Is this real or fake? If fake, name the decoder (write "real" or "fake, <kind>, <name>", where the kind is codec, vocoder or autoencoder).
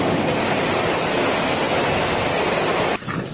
real